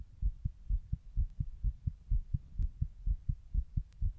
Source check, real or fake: fake